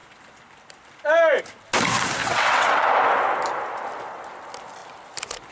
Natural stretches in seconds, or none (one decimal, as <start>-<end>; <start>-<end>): 0.0-2.2; 2.9-5.5